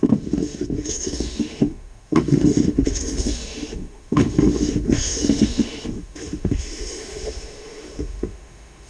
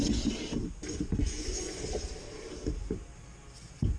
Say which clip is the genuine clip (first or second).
second